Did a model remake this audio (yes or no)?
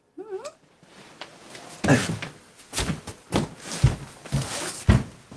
no